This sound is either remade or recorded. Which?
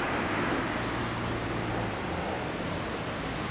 recorded